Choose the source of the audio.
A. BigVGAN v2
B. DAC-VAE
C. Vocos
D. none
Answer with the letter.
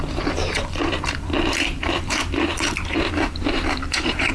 A